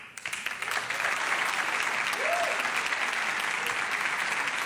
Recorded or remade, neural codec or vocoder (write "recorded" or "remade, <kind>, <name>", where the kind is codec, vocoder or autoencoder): recorded